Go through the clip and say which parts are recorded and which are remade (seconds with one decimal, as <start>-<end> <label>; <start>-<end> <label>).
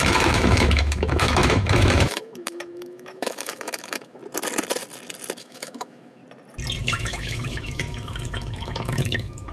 0.0-4.2 remade; 4.2-5.4 recorded; 5.4-6.2 remade; 6.2-6.8 recorded; 6.8-9.5 remade